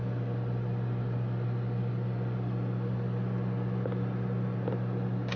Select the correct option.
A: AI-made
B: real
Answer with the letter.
B